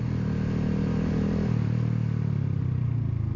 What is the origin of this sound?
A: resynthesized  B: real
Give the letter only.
B